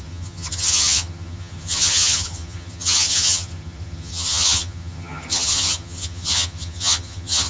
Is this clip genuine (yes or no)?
no